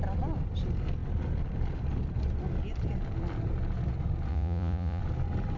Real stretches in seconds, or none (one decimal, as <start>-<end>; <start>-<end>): 0.0-4.3; 5.0-5.6

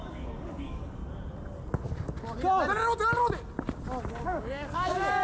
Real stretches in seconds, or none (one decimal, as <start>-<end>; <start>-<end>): 1.0-4.1

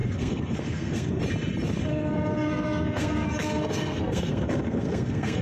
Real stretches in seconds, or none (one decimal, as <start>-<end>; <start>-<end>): 1.2-1.9

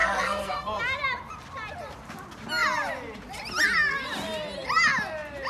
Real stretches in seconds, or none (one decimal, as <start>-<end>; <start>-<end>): 0.8-5.5

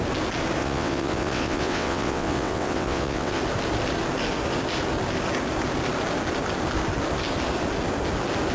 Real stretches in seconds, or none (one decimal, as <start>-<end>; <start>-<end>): 0.0-0.6; 3.4-8.5

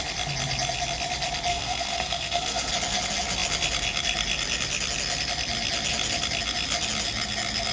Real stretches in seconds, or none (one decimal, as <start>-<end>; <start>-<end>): 0.0-1.5; 2.7-7.7

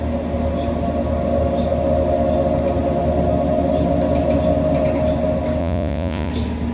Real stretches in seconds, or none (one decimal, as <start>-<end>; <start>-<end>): 0.0-5.6; 6.3-6.7